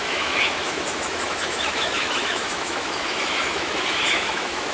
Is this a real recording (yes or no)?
no